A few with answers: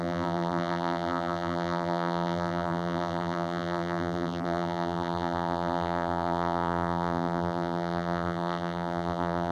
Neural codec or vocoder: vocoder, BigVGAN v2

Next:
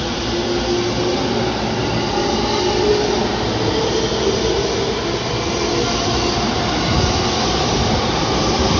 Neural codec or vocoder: none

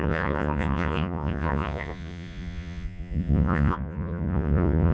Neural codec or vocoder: vocoder, Vocos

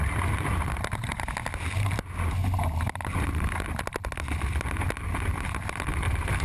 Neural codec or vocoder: none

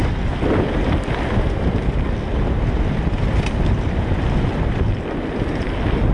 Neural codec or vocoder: none